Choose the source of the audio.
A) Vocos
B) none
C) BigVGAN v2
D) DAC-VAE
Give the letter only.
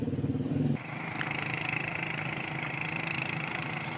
C